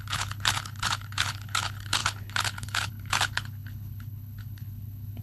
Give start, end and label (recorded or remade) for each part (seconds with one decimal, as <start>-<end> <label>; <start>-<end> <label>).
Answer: 0.0-5.2 remade